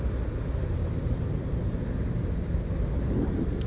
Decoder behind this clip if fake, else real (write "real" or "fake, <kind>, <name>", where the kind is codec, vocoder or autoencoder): real